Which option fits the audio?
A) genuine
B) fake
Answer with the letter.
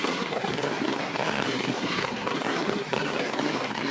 B